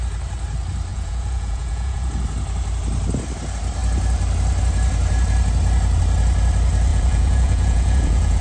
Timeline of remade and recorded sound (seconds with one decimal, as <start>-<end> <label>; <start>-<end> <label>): 0.0-0.9 recorded; 0.9-2.1 remade; 2.1-6.9 recorded; 6.9-8.4 remade